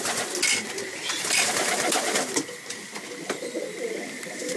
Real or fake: real